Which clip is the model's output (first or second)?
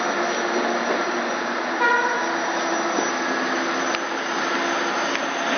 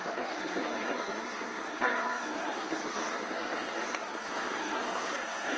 second